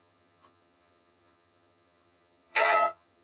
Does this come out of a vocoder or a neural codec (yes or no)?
yes